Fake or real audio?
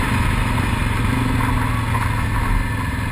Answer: real